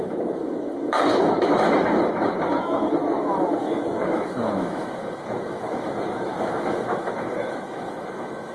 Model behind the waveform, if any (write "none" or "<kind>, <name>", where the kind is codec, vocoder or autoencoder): autoencoder, DAC-VAE